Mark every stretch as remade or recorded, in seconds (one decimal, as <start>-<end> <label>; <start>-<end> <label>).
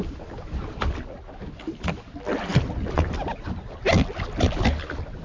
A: 0.0-5.2 recorded